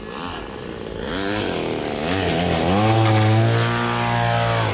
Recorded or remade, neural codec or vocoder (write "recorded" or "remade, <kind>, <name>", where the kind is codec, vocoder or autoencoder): recorded